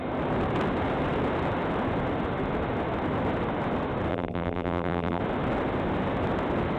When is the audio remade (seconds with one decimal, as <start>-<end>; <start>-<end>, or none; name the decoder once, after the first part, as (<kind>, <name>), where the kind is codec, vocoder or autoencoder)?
4.1-5.2 (vocoder, BigVGAN v2)